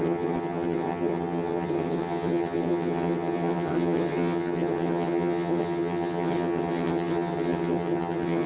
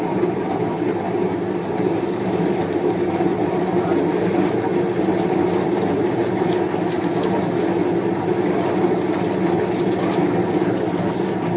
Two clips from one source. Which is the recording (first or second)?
second